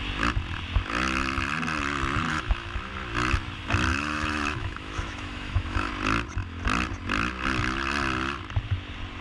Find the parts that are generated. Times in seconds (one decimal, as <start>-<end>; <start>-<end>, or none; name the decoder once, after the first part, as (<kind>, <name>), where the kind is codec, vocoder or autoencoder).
2.3-2.9 (autoencoder, DAC-VAE); 3.9-5.9